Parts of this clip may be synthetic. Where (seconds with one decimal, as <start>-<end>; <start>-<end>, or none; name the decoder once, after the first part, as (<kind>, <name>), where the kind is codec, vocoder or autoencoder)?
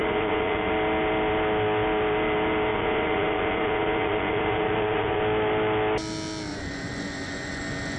0.0-0.7 (vocoder, Vocos); 2.7-5.2; 6.5-8.0